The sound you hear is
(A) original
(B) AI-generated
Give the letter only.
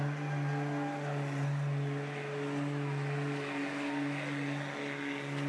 A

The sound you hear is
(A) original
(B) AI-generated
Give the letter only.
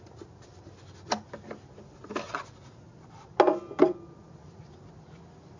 A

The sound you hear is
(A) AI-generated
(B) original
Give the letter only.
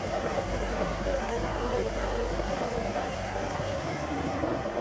A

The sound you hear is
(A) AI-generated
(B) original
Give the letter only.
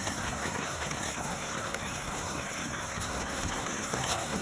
A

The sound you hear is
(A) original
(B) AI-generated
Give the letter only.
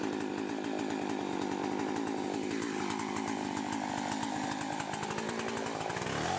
A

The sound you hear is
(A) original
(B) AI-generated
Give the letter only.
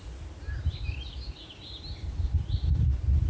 A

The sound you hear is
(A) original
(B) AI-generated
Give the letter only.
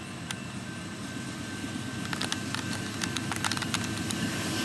A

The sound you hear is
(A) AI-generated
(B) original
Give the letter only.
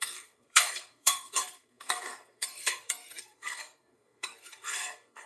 A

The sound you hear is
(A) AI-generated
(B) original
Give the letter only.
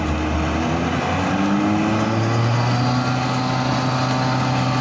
B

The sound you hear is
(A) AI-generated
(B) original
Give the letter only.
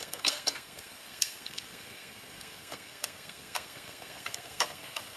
A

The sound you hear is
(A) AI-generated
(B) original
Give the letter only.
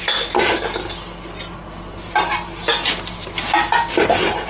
B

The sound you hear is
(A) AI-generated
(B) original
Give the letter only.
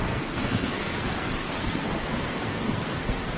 A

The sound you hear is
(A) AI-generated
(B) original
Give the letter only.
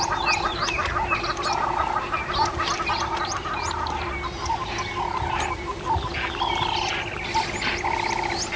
B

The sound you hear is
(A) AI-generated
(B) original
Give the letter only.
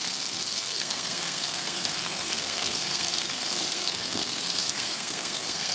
A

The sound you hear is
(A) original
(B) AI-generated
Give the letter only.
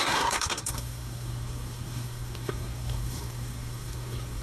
B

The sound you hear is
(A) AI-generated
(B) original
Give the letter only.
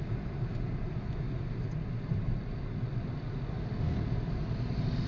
B